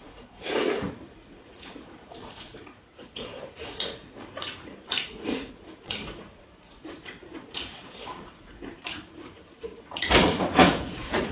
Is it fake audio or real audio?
fake